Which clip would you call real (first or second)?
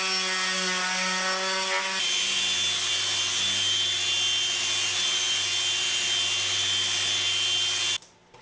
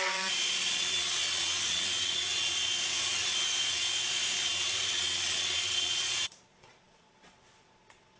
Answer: first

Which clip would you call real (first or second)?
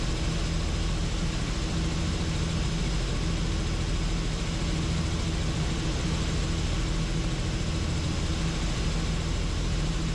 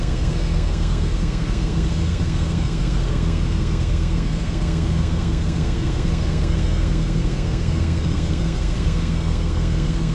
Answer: first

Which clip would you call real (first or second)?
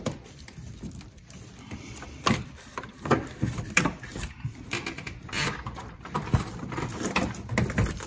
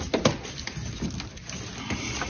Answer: second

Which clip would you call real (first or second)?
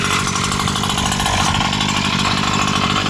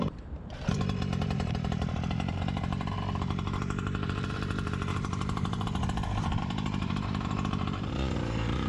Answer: first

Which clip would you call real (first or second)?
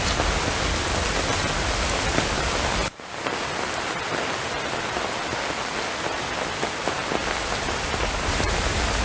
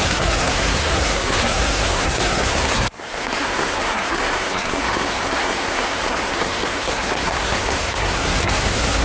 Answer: first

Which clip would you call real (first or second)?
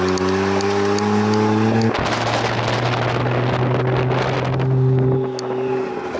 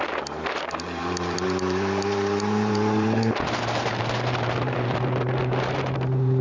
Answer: first